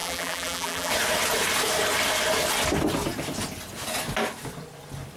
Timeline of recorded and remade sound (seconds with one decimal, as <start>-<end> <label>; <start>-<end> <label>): 0.0-0.9 remade; 0.9-5.2 recorded